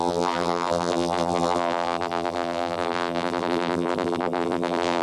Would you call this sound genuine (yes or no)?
no